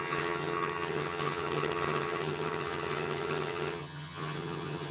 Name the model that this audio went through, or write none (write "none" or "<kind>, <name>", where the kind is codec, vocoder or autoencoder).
vocoder, HiFi-GAN